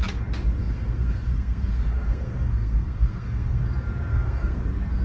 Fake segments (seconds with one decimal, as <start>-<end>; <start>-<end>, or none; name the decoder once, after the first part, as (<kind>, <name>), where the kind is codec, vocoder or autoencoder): 0.6-3.6 (codec, SNAC); 4.1-4.6